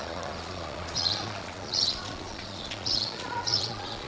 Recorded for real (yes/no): no